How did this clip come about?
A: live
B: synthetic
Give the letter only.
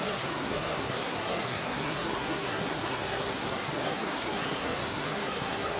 B